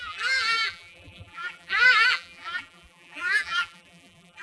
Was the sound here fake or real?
fake